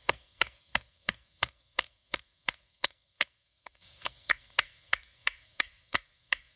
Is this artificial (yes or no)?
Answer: yes